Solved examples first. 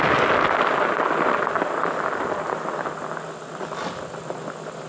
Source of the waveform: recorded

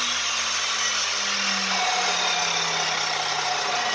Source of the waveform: recorded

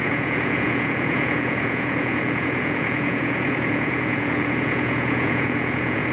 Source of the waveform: remade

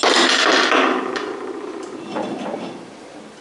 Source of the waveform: recorded